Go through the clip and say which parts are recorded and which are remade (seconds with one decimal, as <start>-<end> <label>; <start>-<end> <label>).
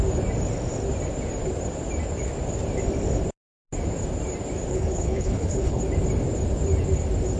0.0-4.7 recorded; 4.7-5.8 remade; 5.8-7.4 recorded